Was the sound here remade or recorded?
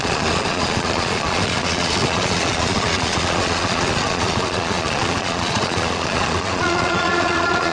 remade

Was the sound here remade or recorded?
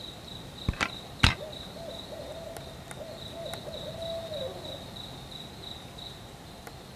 recorded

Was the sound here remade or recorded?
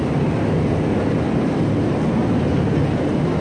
recorded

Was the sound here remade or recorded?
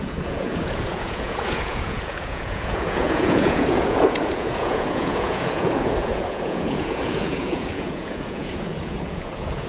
remade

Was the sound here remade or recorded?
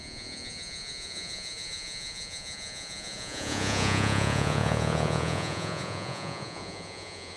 remade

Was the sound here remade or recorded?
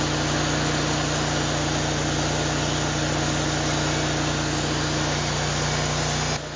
recorded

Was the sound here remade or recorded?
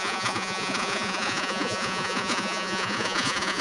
remade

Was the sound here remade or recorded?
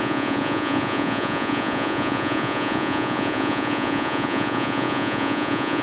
remade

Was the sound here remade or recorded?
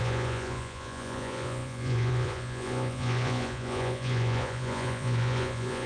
remade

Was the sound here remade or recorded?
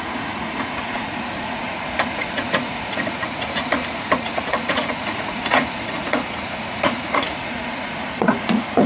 remade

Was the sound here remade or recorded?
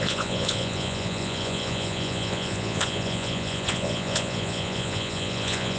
remade